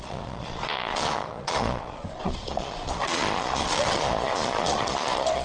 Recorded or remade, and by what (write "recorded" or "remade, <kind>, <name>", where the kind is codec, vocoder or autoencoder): remade, vocoder, Vocos